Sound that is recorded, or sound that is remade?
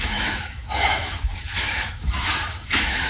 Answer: remade